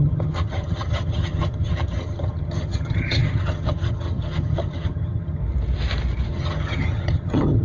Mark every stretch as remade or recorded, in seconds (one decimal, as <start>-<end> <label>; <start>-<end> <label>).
0.0-5.4 remade; 5.4-6.3 recorded; 6.3-7.6 remade